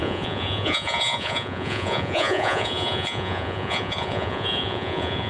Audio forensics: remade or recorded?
remade